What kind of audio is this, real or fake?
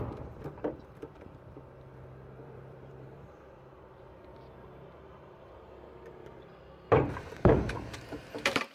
fake